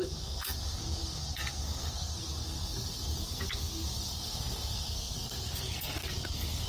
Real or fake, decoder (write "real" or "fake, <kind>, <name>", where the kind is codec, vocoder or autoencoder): fake, codec, SNAC